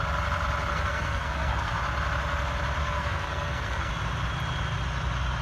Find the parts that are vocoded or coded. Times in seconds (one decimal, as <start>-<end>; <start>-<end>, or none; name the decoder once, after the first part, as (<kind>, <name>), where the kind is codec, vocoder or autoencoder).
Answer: 0.7-1.8 (codec, SNAC); 2.8-3.9